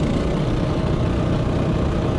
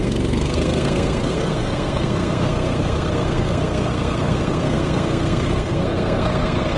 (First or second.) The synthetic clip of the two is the second